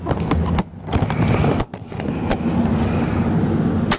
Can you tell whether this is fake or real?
real